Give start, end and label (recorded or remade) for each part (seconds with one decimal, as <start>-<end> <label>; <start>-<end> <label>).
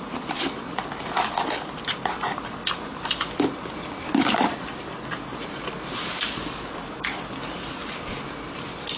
0.0-7.8 remade; 7.8-8.5 recorded; 8.5-9.0 remade